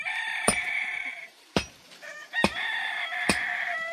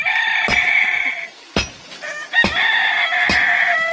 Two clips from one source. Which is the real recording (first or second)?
second